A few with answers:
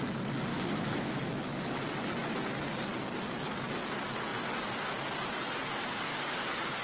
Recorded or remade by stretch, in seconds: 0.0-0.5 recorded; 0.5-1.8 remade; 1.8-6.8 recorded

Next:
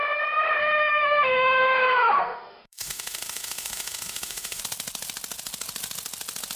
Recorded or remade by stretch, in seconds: 0.0-0.6 recorded; 0.6-4.6 remade; 4.6-6.6 recorded

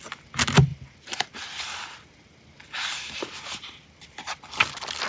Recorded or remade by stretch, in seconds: 0.0-5.1 recorded

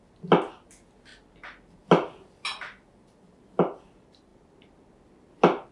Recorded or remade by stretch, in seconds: 0.0-5.7 recorded